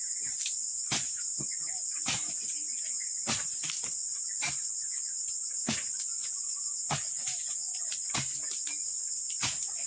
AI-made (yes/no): no